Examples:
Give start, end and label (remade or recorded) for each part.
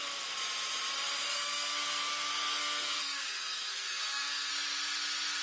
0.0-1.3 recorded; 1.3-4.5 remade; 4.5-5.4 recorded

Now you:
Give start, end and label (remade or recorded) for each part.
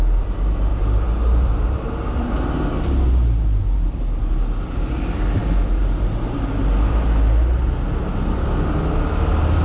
0.0-0.7 recorded; 0.7-2.3 remade; 2.3-9.6 recorded